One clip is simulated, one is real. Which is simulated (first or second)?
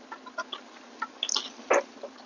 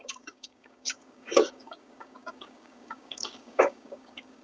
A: second